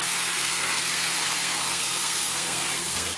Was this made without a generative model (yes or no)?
no